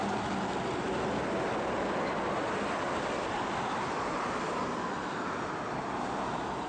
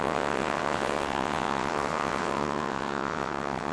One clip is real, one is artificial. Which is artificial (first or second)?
second